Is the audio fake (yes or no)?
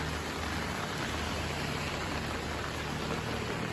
no